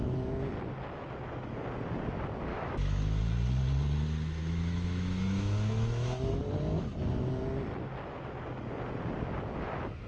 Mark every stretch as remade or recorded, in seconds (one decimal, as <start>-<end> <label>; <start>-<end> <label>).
0.0-2.5 recorded; 2.5-3.2 remade; 3.2-4.4 recorded; 4.4-6.4 remade; 6.4-10.1 recorded